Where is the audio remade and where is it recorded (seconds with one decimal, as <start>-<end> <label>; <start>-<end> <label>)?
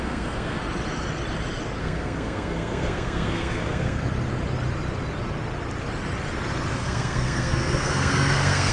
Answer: 0.0-0.6 remade; 0.6-1.8 recorded; 1.8-4.0 remade; 4.0-6.7 recorded; 6.7-8.7 remade